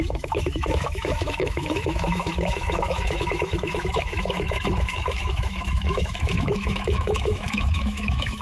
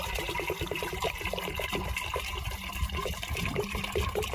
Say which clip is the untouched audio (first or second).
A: second